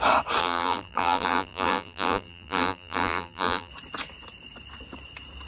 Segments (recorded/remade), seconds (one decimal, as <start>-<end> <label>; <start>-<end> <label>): 0.0-0.4 recorded; 0.4-3.7 remade; 3.7-5.5 recorded